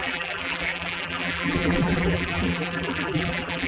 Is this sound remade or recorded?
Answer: remade